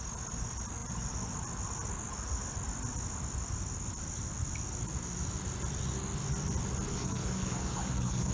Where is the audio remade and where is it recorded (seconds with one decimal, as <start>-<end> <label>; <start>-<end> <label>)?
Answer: 0.0-6.9 recorded; 6.9-8.3 remade